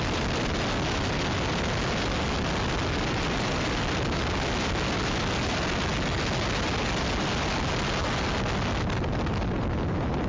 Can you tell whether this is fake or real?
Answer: real